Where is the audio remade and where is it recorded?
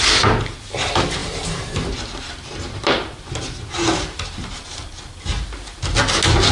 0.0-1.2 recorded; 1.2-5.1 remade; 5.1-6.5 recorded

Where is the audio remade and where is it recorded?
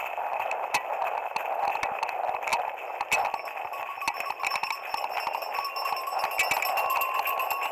0.0-7.7 recorded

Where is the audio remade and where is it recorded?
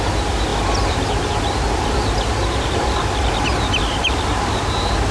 0.0-0.5 recorded; 0.5-1.0 remade; 1.0-2.4 recorded; 2.4-4.3 remade; 4.3-5.1 recorded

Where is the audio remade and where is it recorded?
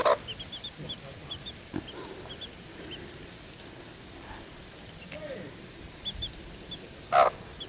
0.0-7.7 recorded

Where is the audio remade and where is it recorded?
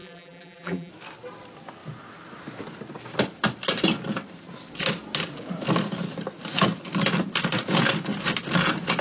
0.0-0.9 remade; 0.9-9.0 recorded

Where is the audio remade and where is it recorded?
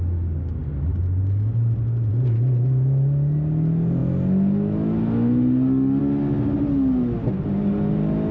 0.0-8.3 recorded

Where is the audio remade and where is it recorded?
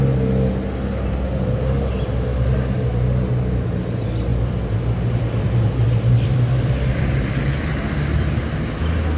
0.0-4.3 recorded; 4.3-8.4 remade; 8.4-9.2 recorded